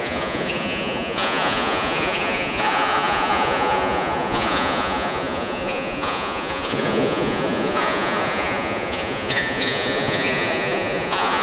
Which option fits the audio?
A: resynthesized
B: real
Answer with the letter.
A